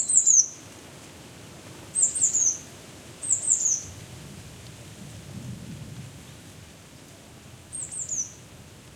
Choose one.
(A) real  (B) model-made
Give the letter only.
A